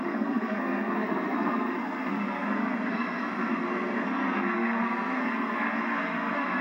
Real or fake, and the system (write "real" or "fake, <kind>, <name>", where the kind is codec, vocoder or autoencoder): fake, codec, SNAC